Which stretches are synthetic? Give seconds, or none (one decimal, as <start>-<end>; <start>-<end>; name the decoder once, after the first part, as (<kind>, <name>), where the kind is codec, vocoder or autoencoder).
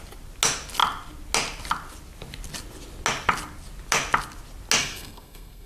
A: 4.8-5.7 (codec, SNAC)